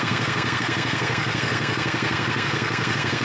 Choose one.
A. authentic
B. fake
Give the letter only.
B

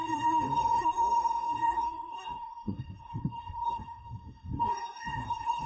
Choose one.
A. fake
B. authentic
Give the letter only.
A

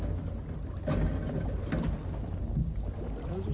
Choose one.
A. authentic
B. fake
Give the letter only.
A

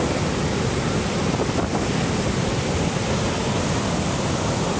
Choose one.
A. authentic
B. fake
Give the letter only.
A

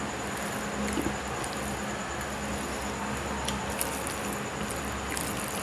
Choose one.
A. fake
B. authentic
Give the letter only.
B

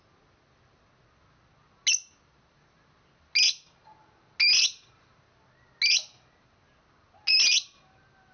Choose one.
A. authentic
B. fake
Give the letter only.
A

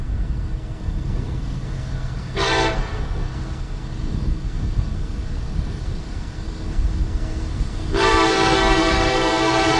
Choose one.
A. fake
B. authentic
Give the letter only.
A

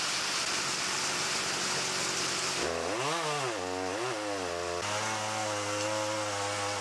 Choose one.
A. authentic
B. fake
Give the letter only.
A